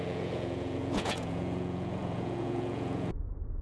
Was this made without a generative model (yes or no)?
no